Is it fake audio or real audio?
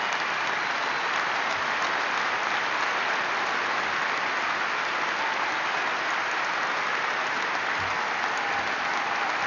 real